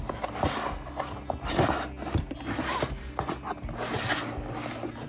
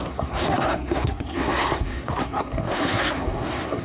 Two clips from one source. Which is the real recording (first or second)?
first